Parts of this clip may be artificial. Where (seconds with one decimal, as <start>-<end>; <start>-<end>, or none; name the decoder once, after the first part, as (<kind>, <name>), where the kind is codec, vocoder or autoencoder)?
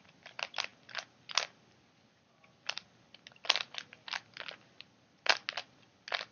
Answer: none